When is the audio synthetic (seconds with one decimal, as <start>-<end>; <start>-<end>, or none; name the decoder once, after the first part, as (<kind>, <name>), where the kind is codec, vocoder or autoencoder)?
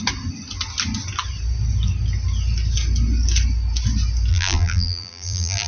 4.3-5.7 (vocoder, BigVGAN v2)